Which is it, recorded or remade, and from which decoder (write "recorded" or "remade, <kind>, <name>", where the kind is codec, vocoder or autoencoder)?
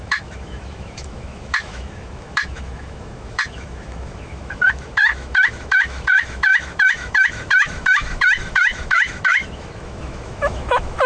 remade, autoencoder, DAC-VAE